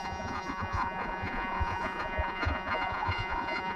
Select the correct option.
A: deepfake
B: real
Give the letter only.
A